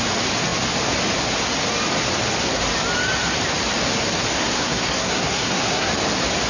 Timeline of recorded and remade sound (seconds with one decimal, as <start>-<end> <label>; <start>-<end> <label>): 0.0-4.3 recorded; 4.3-5.9 remade; 5.9-6.5 recorded